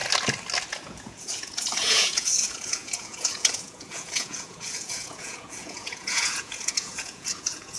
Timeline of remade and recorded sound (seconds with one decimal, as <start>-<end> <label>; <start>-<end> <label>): 0.0-0.7 recorded; 0.7-7.8 remade